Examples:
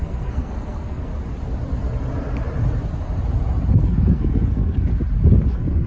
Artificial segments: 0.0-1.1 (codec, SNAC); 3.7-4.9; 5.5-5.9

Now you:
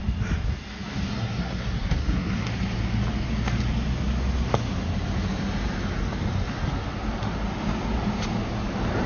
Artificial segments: 1.1-2.5 (codec, SNAC)

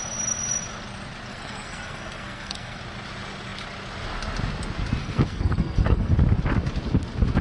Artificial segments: 1.3-2.8 (codec, SNAC); 5.0-6.1